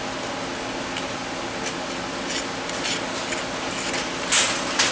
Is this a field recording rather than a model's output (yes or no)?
yes